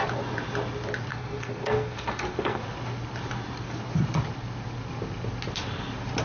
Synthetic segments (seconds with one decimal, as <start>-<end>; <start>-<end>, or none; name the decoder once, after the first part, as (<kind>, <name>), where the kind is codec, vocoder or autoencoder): 1.1-2.6 (codec, SNAC)